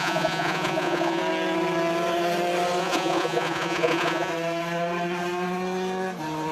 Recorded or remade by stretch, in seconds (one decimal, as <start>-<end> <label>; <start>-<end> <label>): 0.0-1.2 remade; 1.2-2.8 recorded; 2.8-4.3 remade; 4.3-6.5 recorded